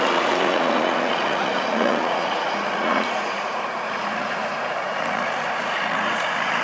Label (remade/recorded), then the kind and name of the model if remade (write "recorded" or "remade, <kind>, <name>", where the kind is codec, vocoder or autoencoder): remade, vocoder, Vocos